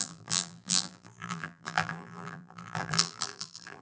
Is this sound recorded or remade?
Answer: remade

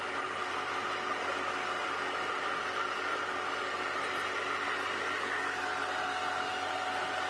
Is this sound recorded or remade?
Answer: recorded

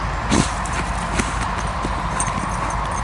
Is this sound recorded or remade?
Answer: recorded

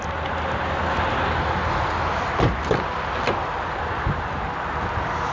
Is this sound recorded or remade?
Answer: recorded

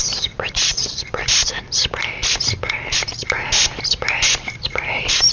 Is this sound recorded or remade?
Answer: recorded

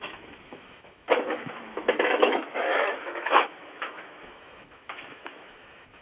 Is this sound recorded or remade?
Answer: remade